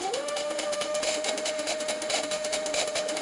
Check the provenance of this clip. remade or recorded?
remade